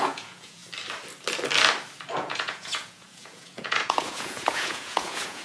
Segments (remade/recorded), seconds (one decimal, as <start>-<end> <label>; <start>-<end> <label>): 0.0-0.6 remade; 0.6-2.1 recorded; 2.1-5.4 remade